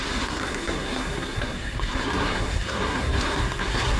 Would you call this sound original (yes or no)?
no